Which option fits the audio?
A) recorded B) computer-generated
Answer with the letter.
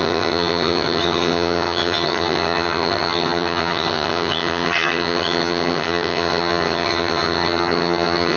B